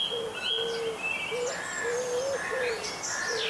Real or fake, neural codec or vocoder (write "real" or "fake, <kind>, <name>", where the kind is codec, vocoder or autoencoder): real